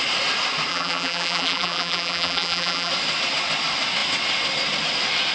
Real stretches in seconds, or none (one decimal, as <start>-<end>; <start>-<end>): 0.0-0.7; 2.9-5.3